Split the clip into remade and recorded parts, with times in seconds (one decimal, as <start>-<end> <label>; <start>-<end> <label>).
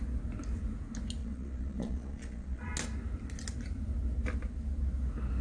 0.0-1.2 recorded; 1.2-2.7 remade; 2.7-5.4 recorded